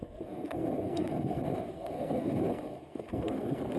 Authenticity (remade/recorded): remade